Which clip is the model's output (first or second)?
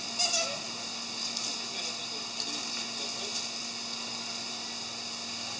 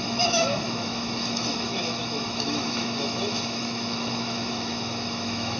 second